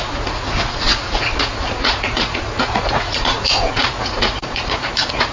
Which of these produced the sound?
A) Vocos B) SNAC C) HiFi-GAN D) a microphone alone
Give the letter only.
A